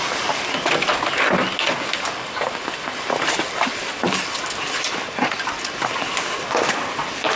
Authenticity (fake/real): real